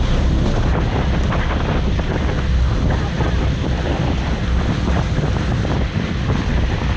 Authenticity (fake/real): fake